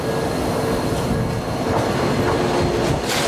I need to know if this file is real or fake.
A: real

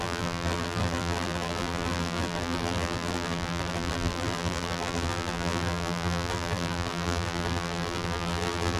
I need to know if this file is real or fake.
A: fake